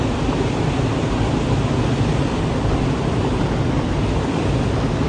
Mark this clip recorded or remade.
recorded